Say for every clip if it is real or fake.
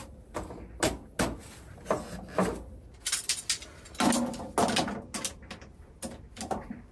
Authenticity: real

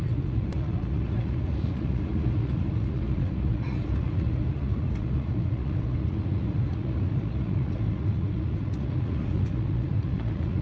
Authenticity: fake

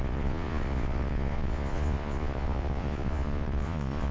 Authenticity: fake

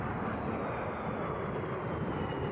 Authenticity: real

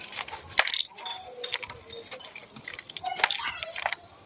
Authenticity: real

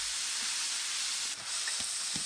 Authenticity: real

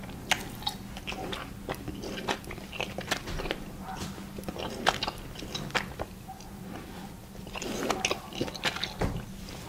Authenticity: real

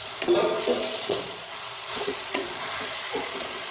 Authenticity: fake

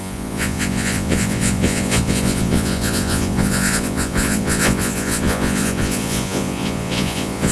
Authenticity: fake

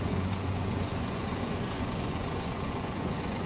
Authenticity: fake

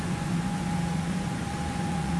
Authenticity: fake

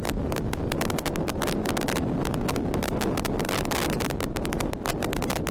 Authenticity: real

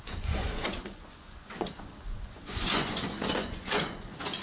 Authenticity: fake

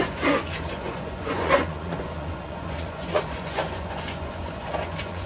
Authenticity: fake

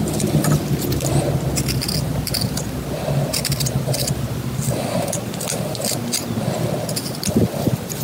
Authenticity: real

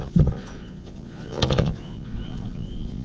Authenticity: fake